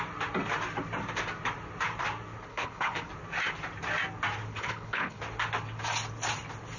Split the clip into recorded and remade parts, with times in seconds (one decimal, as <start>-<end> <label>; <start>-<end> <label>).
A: 0.0-2.5 recorded; 2.5-3.1 remade; 3.1-4.5 recorded; 4.5-5.2 remade; 5.2-6.8 recorded